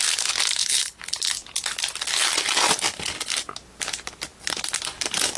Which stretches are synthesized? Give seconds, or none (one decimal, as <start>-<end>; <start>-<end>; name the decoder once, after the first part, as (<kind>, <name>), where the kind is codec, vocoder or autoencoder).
0.6-1.1 (codec, HILCodec)

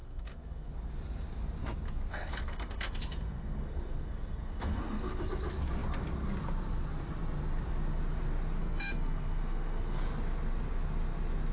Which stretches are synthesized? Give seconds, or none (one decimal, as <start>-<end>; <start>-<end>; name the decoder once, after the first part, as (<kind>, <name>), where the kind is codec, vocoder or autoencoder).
0.0-0.7 (codec, SNAC); 2.1-5.2; 8.6-10.0